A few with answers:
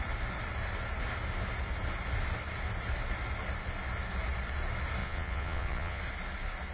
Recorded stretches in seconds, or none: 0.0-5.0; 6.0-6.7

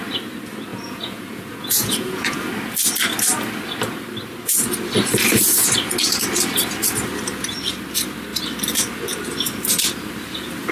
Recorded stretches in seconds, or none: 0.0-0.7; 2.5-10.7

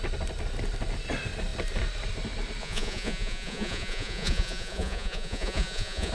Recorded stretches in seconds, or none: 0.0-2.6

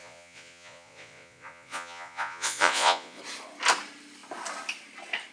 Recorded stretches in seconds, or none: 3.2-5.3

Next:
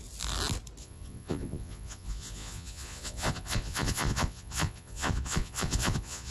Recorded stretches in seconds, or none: 0.0-0.8

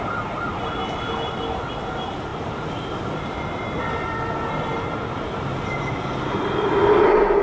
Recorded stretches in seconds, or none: 0.0-7.4